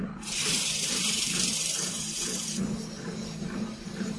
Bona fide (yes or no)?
no